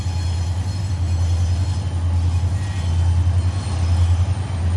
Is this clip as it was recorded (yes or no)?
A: yes